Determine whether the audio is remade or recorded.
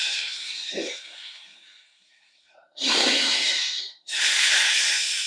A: remade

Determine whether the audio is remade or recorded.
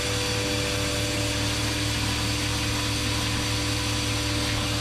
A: recorded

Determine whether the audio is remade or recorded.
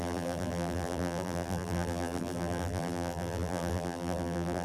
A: remade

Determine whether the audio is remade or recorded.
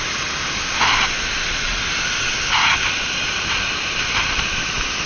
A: recorded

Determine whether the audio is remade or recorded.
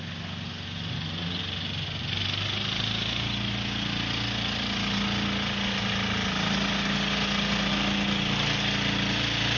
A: recorded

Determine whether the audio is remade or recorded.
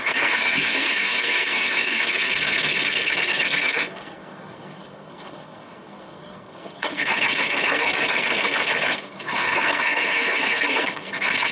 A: remade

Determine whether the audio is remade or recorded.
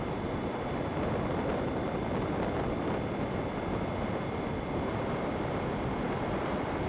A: recorded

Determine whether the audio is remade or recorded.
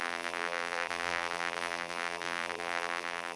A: remade